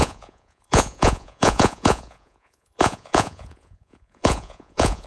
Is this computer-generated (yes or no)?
yes